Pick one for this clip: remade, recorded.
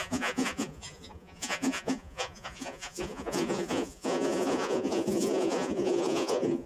remade